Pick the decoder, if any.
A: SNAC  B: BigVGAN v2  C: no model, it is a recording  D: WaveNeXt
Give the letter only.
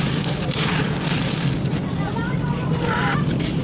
C